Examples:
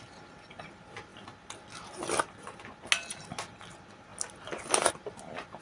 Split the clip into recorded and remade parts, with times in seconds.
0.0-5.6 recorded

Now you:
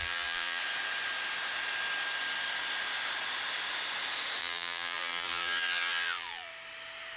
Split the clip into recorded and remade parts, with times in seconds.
0.0-0.6 remade; 0.6-4.4 recorded; 4.4-6.5 remade; 6.5-7.2 recorded

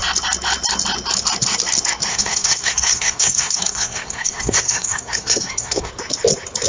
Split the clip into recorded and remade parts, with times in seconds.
0.0-2.1 recorded; 2.1-5.9 remade; 5.9-6.7 recorded

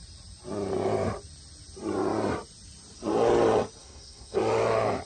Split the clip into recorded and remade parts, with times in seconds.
0.0-3.8 recorded; 3.8-4.4 remade; 4.4-5.1 recorded

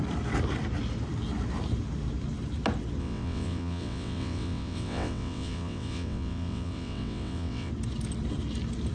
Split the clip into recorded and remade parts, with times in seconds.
0.0-3.0 recorded; 3.0-7.7 remade; 7.7-8.9 recorded

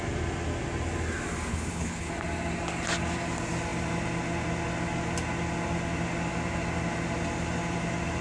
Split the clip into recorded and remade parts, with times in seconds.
0.0-1.5 recorded; 1.5-2.1 remade; 2.1-8.2 recorded